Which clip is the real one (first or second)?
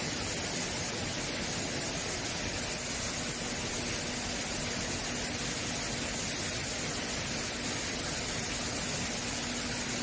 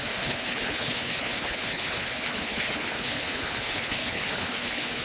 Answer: first